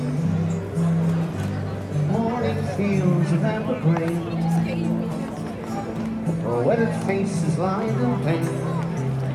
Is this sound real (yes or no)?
yes